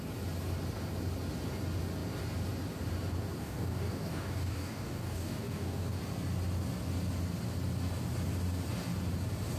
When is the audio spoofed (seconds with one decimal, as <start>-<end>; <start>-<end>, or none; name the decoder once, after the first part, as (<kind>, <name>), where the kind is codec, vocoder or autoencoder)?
3.4-6.0 (codec, DAC)